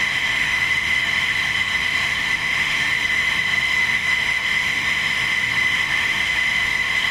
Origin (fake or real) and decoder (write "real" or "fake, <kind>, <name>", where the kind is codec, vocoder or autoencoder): fake, autoencoder, DAC-VAE